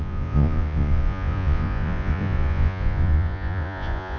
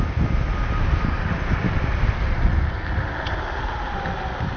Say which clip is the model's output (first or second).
first